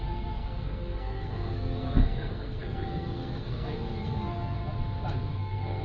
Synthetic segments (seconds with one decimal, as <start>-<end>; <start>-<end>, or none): 0.0-4.6; 5.3-5.8